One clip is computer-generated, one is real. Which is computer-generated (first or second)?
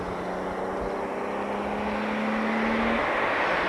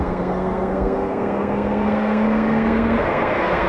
second